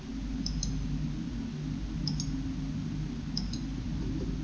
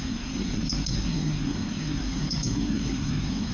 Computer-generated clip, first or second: second